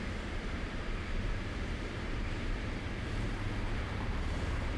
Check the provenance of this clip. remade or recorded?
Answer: remade